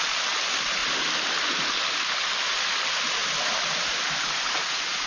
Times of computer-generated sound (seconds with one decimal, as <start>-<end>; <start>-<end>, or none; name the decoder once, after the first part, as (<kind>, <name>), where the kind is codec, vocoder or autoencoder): 0.8-1.4 (vocoder, BigVGAN v2); 3.2-5.1